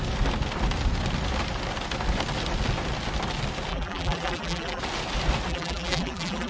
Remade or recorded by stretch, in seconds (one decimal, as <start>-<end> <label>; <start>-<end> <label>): 0.0-3.7 recorded; 3.7-4.8 remade; 4.8-5.5 recorded; 5.5-6.5 remade